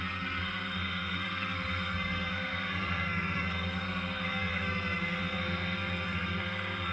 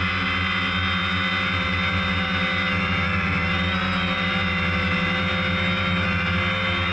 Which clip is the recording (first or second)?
second